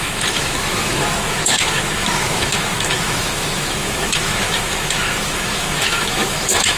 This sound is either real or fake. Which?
fake